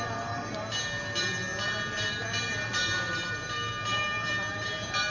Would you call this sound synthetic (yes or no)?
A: no